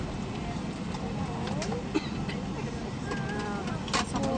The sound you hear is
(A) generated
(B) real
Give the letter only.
B